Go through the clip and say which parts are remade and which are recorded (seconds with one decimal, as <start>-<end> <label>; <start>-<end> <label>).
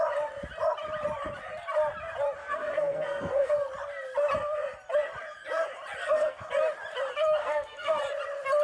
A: 0.0-2.4 recorded; 2.4-3.5 remade; 3.5-6.0 recorded; 6.0-6.5 remade; 6.5-7.4 recorded; 7.4-8.0 remade; 8.0-8.6 recorded